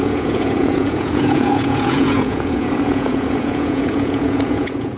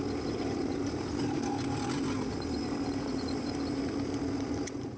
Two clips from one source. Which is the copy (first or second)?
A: first